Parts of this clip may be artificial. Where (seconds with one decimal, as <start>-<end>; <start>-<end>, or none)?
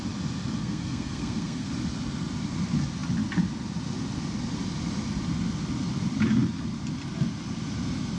0.6-1.7